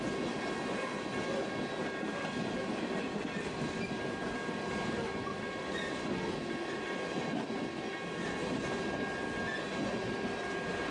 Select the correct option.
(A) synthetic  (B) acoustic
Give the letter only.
B